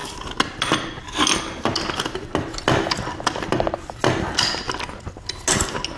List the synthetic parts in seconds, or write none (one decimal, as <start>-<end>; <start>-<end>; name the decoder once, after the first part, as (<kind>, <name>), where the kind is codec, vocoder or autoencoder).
none